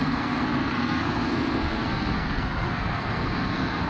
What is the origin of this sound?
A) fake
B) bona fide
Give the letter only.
A